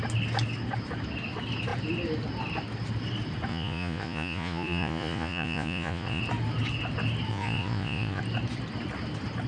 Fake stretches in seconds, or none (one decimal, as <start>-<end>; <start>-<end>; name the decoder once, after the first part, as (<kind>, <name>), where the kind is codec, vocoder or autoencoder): 3.5-6.2 (vocoder, Vocos); 7.3-8.2